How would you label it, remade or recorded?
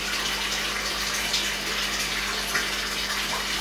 recorded